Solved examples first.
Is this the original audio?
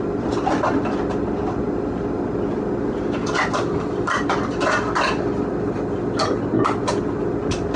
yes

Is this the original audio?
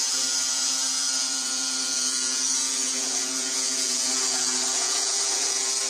no